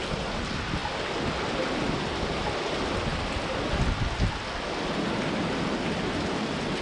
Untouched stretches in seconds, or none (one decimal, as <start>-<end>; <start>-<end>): 0.0-6.8